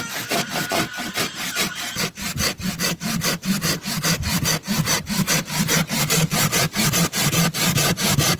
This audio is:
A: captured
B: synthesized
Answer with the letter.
B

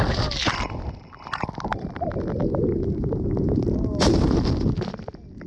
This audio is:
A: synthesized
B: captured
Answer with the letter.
B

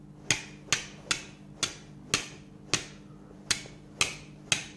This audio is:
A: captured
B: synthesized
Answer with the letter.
A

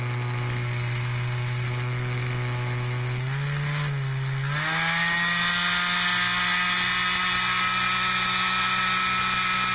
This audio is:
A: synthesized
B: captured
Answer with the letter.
B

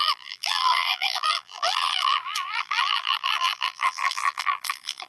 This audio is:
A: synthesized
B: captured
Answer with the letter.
A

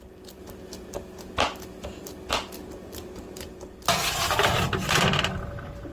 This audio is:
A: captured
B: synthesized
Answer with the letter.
A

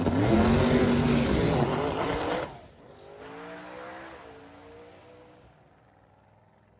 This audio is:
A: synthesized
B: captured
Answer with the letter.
B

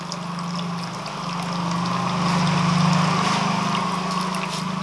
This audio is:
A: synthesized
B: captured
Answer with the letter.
B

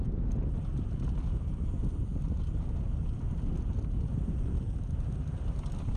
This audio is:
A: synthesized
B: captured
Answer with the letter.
B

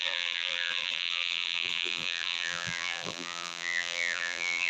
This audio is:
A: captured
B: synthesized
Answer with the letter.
B